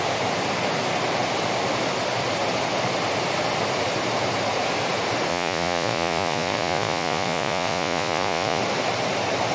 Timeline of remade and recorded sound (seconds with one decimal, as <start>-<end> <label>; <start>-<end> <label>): 0.0-5.3 recorded; 5.3-8.6 remade; 8.6-9.5 recorded